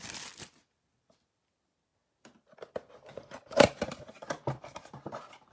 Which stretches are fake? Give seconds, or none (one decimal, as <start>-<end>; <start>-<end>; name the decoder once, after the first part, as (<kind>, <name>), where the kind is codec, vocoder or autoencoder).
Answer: 0.0-1.9 (vocoder, BigVGAN v2); 3.9-5.5